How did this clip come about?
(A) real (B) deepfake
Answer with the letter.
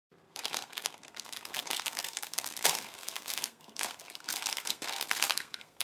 B